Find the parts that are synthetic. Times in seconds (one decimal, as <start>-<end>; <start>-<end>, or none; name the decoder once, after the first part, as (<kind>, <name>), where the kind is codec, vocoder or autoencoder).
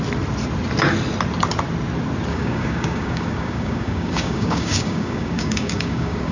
2.3-6.3 (codec, DAC)